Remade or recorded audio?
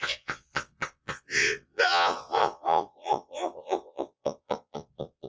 remade